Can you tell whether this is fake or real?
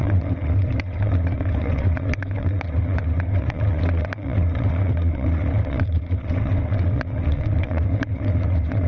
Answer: fake